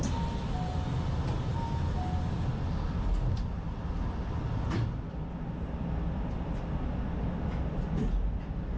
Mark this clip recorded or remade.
recorded